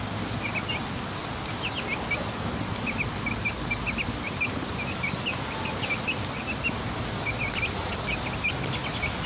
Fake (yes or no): no